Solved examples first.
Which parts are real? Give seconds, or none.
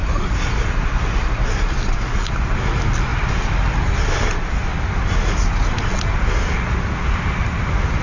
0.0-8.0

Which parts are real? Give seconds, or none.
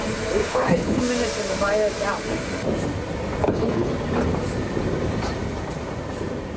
0.0-0.4; 1.0-3.4; 3.9-6.6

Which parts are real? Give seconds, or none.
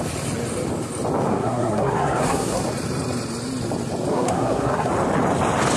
0.0-1.3; 2.6-4.1; 4.9-5.8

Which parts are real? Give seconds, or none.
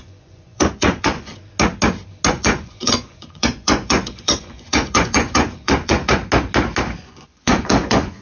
1.3-2.3; 6.2-7.0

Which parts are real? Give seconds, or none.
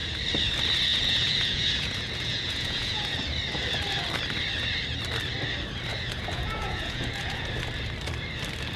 0.0-0.9; 3.2-5.9; 7.5-8.8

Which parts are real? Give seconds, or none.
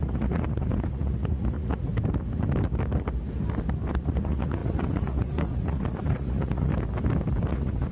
1.9-3.9; 6.7-7.5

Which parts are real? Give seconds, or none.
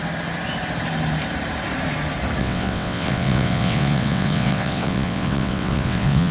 0.0-2.4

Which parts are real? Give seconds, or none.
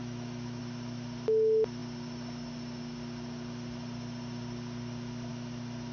0.6-5.9